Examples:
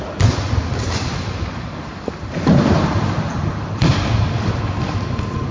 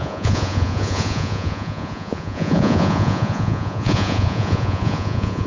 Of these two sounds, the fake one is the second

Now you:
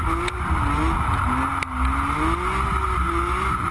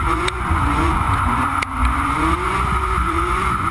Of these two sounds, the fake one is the second